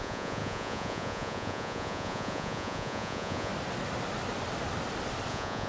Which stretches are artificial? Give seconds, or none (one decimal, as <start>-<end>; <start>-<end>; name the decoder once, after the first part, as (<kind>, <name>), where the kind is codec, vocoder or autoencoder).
0.0-3.5 (vocoder, Vocos); 5.3-5.7